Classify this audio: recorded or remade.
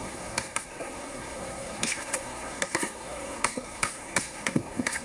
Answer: remade